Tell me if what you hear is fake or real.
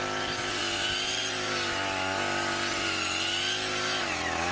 real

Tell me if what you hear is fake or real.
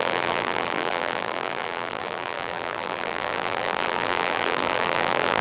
fake